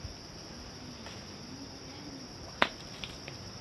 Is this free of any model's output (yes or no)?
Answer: yes